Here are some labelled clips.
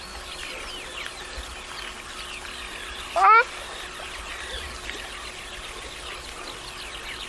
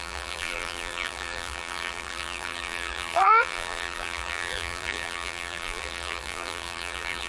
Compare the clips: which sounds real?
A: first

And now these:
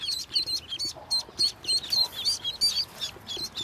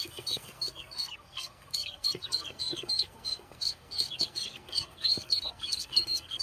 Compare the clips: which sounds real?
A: first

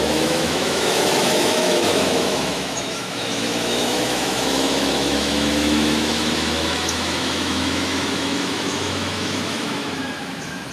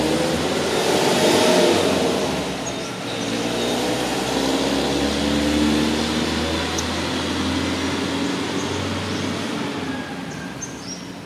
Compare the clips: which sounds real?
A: second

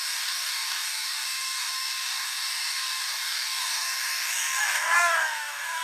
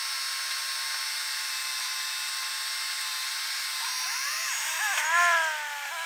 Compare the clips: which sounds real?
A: second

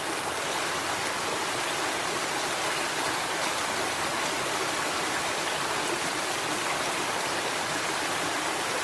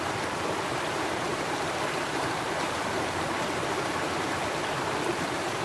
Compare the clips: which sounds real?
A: first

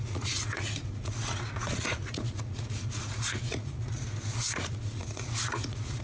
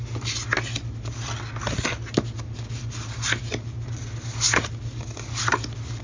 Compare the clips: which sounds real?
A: second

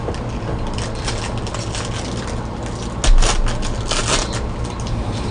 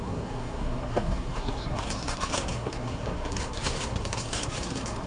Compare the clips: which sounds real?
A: first